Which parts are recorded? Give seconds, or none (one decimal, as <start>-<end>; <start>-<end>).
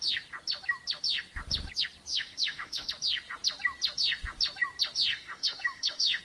0.0-2.1; 2.9-5.1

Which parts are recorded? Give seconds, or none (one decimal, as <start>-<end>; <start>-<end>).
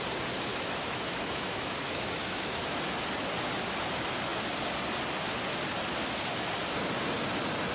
0.0-0.5; 2.6-7.7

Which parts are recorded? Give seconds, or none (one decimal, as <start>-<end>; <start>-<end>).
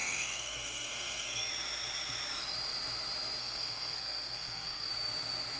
1.5-3.4; 4.9-5.6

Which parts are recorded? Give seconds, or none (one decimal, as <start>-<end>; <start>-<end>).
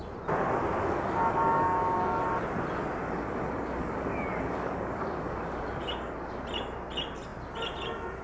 0.0-0.8; 2.2-3.0; 6.4-8.2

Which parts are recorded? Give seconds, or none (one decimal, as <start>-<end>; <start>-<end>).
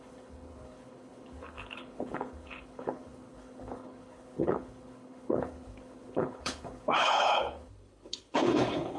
none